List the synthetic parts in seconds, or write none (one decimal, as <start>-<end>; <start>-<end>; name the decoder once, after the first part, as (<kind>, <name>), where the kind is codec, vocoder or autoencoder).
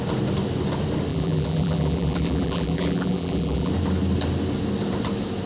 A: 1.1-3.7 (vocoder, BigVGAN v2)